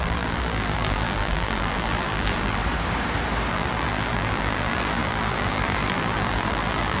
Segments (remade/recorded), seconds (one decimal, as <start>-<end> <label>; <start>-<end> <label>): 0.0-2.6 remade; 2.6-3.5 recorded; 3.5-7.0 remade